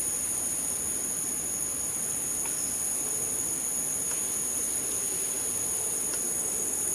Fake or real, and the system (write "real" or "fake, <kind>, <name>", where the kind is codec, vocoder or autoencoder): real